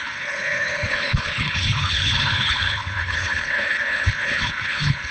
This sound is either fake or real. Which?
fake